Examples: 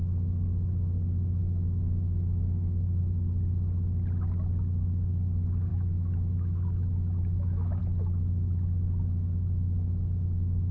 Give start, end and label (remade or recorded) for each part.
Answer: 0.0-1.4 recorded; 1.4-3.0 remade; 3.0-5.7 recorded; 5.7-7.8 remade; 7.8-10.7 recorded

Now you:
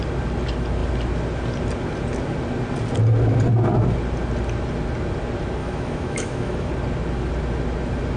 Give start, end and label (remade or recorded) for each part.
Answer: 0.0-5.6 recorded; 5.6-6.7 remade; 6.7-8.2 recorded

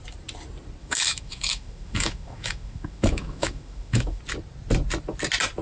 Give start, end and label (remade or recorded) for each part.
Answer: 0.0-0.8 recorded; 0.8-4.2 remade; 4.2-5.6 recorded

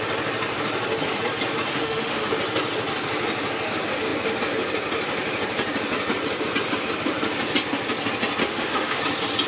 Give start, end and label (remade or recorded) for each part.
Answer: 0.0-1.7 recorded; 1.7-2.3 remade; 2.3-8.4 recorded; 8.4-9.0 remade; 9.0-9.5 recorded

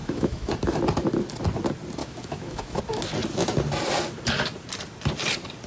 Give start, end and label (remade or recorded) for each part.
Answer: 0.0-0.5 remade; 0.5-2.0 recorded; 2.0-2.8 remade; 2.8-5.7 recorded

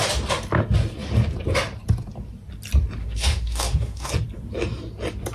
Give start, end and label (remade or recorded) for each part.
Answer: 0.0-3.0 recorded; 3.0-4.1 remade; 4.1-5.3 recorded